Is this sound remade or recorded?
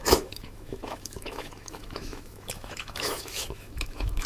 remade